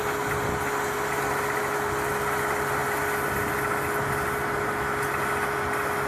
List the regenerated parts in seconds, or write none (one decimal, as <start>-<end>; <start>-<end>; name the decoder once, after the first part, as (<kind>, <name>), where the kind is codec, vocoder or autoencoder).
none